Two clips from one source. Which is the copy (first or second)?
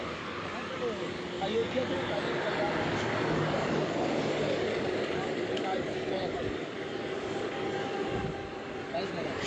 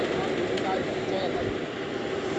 first